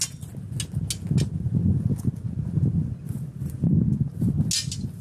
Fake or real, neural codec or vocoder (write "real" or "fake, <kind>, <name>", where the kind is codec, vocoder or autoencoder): real